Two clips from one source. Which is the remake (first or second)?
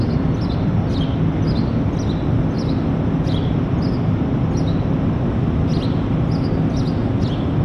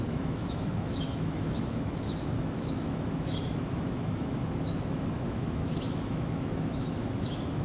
second